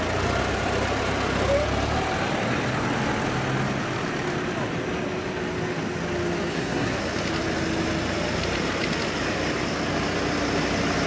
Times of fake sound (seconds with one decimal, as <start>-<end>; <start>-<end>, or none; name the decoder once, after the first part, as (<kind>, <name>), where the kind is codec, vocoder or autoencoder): 6.5-7.0 (codec, SNAC)